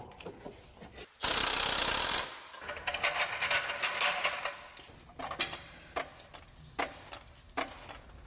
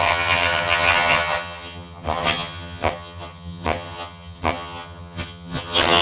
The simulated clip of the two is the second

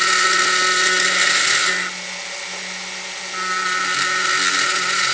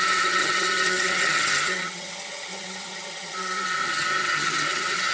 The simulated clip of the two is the second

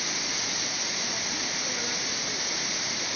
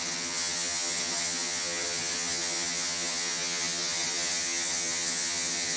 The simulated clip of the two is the second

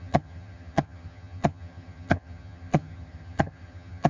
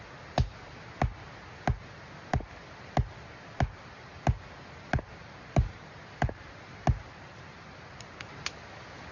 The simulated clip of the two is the first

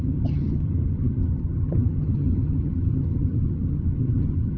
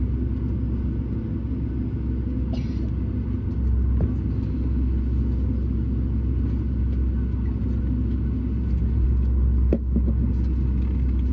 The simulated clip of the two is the first